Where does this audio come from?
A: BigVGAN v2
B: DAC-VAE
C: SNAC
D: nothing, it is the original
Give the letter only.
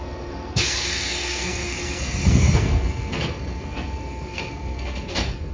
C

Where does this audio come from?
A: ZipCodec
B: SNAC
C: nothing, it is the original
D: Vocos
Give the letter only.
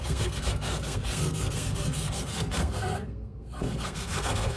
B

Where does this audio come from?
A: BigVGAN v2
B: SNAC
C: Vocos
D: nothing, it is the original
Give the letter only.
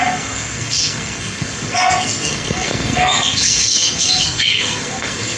B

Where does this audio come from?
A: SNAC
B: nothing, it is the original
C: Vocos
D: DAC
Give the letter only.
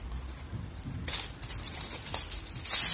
B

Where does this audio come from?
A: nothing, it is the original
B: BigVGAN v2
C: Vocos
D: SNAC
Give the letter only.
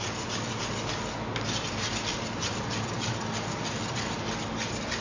A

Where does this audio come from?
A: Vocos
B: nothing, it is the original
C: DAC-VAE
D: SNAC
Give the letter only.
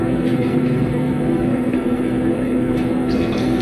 D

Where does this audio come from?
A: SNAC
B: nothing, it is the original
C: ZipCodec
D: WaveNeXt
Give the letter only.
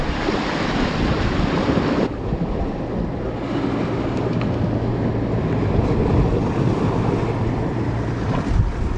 B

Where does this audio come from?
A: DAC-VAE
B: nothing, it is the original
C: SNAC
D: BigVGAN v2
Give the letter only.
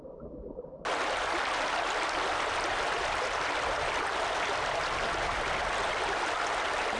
B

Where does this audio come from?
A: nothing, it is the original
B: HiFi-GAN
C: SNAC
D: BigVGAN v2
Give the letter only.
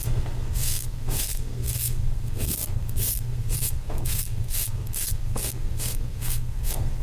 C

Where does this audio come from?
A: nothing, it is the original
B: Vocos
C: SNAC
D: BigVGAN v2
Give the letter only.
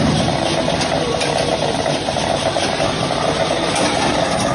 A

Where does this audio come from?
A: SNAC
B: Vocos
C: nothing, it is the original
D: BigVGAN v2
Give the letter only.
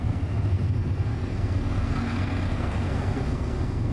A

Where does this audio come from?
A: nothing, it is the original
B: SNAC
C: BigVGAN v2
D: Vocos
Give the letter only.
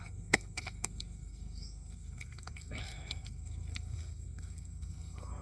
B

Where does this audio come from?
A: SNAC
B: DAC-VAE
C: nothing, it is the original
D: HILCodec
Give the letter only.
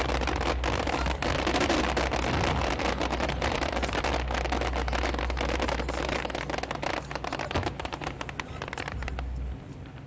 C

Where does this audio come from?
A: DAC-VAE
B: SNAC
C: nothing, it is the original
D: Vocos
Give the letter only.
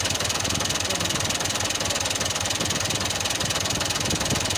C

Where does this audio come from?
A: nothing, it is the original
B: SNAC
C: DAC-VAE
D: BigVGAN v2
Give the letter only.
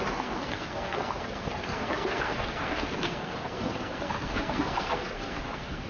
B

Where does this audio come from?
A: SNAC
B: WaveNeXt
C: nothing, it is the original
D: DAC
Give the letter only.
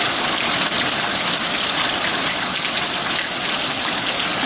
C